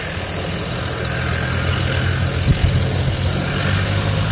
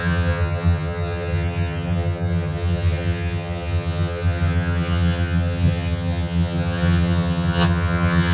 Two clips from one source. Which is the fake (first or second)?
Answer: second